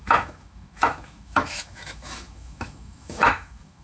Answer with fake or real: fake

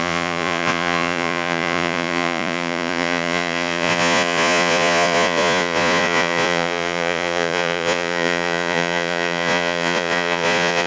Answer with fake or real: fake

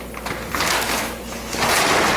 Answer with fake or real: real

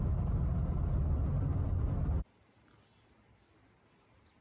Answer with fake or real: real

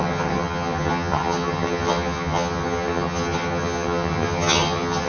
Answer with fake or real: fake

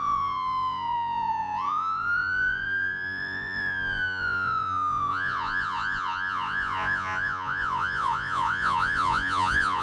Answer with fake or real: fake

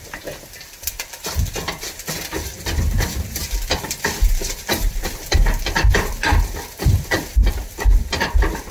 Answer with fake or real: fake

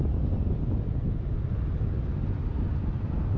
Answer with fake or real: real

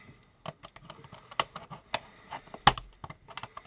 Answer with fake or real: real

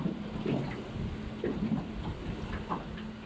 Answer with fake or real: real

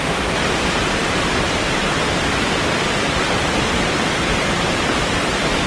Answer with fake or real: fake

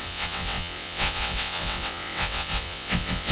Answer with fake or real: fake